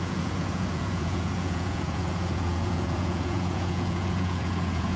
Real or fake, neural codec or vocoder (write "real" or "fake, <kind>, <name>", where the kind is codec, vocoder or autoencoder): fake, vocoder, Vocos